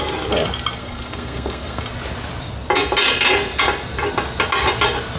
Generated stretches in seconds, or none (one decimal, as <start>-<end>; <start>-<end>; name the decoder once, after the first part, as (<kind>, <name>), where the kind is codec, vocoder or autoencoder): 0.8-1.8 (codec, SNAC)